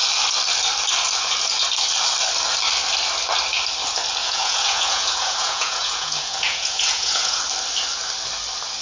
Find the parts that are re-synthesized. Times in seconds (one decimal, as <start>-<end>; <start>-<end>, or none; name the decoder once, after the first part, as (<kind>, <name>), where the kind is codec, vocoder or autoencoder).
4.2-7.4 (vocoder, Vocos)